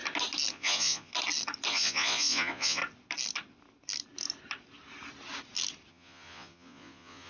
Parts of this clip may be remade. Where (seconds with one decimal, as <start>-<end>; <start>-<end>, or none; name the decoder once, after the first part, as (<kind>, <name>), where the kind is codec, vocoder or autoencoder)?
0.5-1.1 (vocoder, Vocos); 1.7-2.8; 5.9-7.3